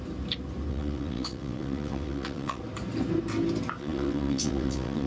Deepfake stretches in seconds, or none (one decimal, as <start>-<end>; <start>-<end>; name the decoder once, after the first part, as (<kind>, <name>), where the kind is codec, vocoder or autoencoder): 0.7-2.6 (vocoder, WaveNeXt); 3.8-5.1